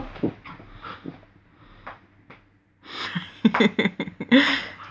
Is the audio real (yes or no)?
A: yes